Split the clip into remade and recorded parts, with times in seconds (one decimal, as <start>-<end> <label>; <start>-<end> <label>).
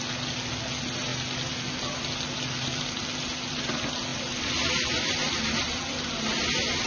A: 0.0-6.9 recorded